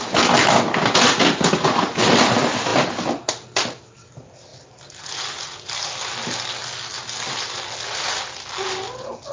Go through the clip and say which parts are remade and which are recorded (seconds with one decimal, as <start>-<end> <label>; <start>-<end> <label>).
0.0-9.3 recorded